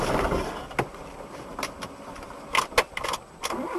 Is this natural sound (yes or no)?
yes